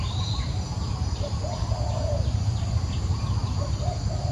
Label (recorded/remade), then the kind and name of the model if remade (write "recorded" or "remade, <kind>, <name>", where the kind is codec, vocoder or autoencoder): recorded